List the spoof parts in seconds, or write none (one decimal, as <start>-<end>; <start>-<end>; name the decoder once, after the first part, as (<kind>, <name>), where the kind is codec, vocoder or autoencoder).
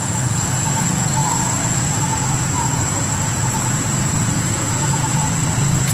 0.0-5.9 (vocoder, Vocos)